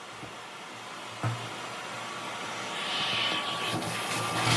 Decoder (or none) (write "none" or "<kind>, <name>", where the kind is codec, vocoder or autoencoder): none